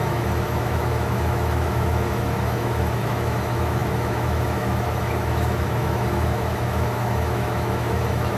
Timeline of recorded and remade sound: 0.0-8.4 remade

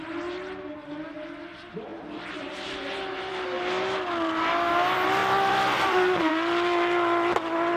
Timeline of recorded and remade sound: 0.0-5.2 recorded; 5.2-6.3 remade; 6.3-7.8 recorded

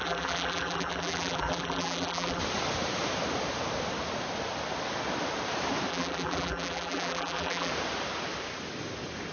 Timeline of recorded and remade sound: 0.0-2.4 remade; 2.4-5.9 recorded; 5.9-7.7 remade; 7.7-9.3 recorded

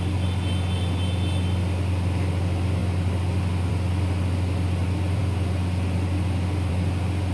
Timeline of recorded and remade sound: 0.0-7.3 recorded